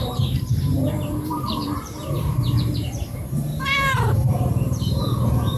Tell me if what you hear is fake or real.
fake